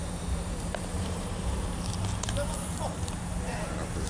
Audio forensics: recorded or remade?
remade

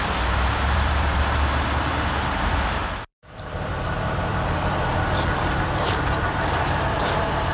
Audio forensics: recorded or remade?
remade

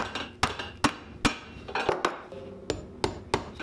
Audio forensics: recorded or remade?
recorded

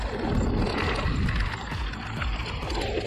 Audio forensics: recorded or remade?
recorded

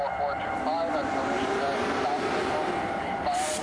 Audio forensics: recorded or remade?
remade